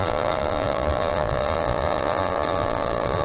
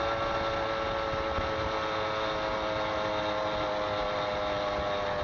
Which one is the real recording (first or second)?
second